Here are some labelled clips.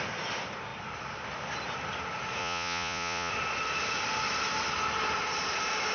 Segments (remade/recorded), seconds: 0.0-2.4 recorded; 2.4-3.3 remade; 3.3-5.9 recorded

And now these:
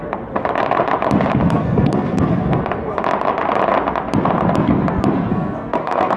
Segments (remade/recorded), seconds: 0.0-1.4 recorded; 1.4-2.6 remade; 2.6-5.3 recorded; 5.3-6.2 remade

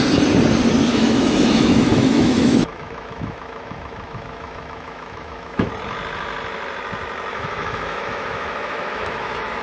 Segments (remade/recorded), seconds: 0.0-0.9 recorded; 0.9-5.7 remade; 5.7-7.3 recorded; 7.3-9.6 remade

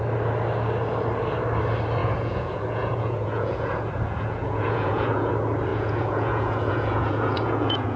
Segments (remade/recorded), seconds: 0.0-2.0 recorded; 2.0-5.3 remade; 5.3-5.7 recorded; 5.7-8.0 remade